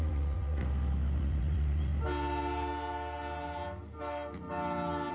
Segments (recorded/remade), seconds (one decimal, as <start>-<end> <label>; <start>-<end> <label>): 0.0-0.6 remade; 0.6-1.2 recorded; 1.2-1.9 remade; 1.9-5.1 recorded

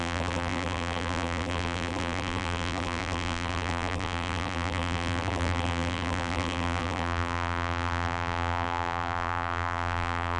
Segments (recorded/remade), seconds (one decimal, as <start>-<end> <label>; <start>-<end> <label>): 0.0-10.4 remade

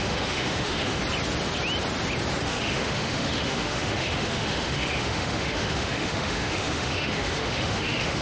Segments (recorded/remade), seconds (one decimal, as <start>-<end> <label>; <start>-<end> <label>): 0.0-1.0 remade; 1.0-2.4 recorded; 2.4-8.2 remade

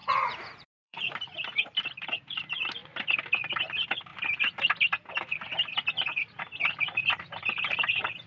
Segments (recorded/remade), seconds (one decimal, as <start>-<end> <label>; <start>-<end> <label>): 0.0-1.1 remade; 1.1-8.3 recorded

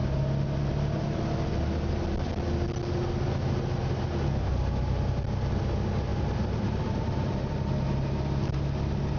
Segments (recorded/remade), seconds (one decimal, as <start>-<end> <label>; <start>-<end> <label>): 0.0-6.1 recorded; 6.1-7.7 remade; 7.7-9.2 recorded